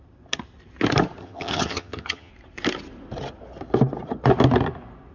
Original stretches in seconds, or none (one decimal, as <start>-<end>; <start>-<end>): 0.0-1.2; 2.3-5.1